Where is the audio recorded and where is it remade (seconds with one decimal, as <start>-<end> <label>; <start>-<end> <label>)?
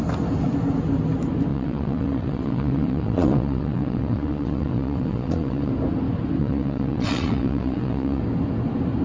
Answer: 0.0-1.5 recorded; 1.5-5.7 remade; 5.7-6.4 recorded; 6.4-8.2 remade; 8.2-9.0 recorded